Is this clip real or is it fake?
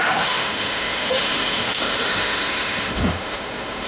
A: fake